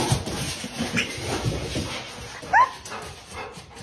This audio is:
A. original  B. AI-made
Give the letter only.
A